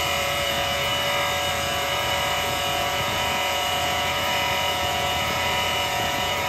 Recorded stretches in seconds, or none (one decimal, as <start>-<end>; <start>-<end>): 0.9-1.5